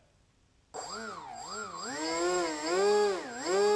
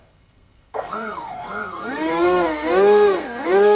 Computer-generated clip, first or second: second